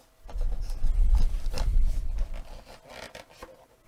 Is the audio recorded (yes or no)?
yes